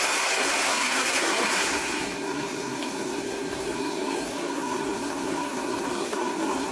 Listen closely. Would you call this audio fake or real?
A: fake